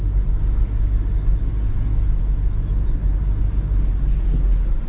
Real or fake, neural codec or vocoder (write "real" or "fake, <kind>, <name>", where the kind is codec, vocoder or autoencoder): real